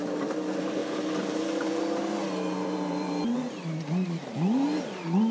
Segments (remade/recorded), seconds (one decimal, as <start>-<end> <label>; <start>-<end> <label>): 0.0-5.3 remade